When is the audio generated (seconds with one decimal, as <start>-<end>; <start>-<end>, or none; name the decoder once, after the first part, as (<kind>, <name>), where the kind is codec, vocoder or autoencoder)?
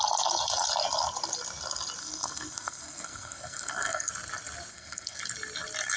2.0-4.1 (codec, SNAC); 4.7-5.2